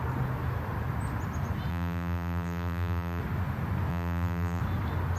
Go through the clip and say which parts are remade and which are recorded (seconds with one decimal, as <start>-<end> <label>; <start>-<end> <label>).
0.0-1.7 recorded; 1.7-3.2 remade; 3.2-3.9 recorded; 3.9-4.6 remade; 4.6-5.2 recorded